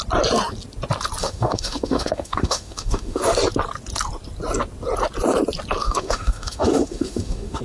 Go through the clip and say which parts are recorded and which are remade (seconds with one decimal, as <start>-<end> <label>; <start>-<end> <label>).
0.0-1.2 recorded; 1.2-3.2 remade; 3.2-5.8 recorded; 5.8-7.6 remade